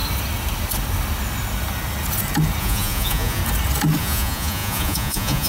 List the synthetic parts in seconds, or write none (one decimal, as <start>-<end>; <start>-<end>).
2.6-3.4; 4.0-5.5